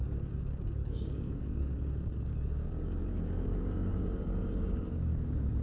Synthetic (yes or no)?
yes